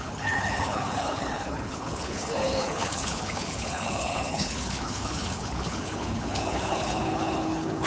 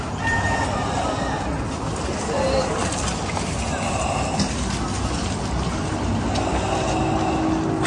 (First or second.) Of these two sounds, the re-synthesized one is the first